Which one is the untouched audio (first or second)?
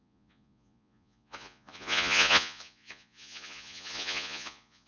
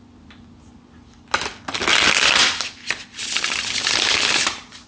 second